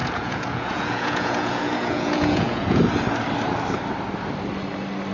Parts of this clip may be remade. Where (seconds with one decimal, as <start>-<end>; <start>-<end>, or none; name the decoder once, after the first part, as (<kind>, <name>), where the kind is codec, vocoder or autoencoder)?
0.0-2.8 (vocoder, Vocos)